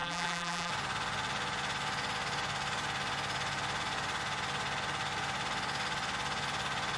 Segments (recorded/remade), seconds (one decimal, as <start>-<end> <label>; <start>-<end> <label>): 0.0-0.7 remade; 0.7-7.0 recorded